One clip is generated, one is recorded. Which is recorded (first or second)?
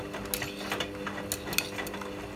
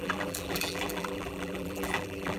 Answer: first